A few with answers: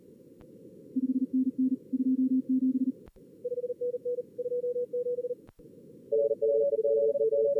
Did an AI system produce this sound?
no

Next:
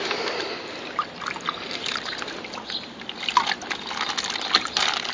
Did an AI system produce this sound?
no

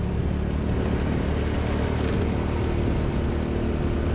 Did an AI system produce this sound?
no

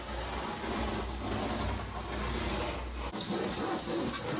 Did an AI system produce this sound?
no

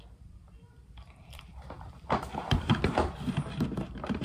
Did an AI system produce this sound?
yes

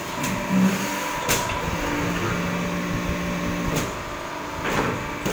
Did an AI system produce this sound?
no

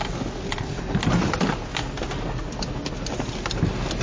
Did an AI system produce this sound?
no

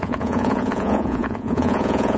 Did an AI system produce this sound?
yes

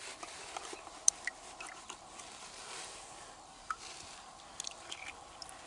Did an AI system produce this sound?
yes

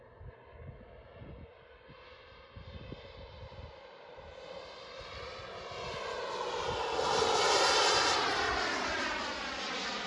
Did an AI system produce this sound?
no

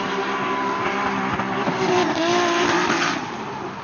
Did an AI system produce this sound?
no